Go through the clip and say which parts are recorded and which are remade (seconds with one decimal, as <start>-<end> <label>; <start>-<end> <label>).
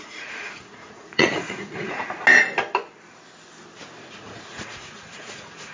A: 0.0-2.0 remade; 2.0-4.0 recorded; 4.0-5.7 remade